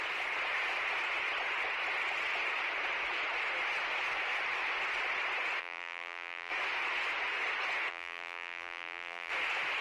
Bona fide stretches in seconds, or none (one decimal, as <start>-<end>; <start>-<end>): 0.0-5.6; 6.5-7.9; 9.3-9.8